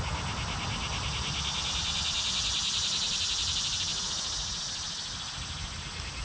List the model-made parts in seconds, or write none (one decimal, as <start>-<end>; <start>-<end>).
3.9-4.6